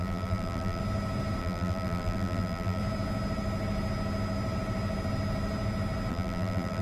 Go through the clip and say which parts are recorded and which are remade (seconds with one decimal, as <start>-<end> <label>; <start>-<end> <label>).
0.0-0.8 remade; 0.8-1.4 recorded; 1.4-2.8 remade; 2.8-6.1 recorded; 6.1-6.8 remade